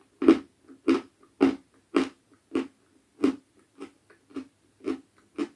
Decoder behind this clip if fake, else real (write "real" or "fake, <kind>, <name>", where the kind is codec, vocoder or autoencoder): real